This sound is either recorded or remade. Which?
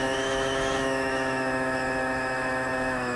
remade